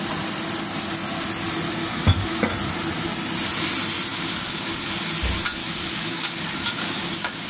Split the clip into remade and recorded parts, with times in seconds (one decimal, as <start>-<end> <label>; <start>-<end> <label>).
0.0-1.8 recorded; 1.8-2.5 remade; 2.5-4.1 recorded; 4.1-5.1 remade; 5.1-5.6 recorded; 5.6-7.5 remade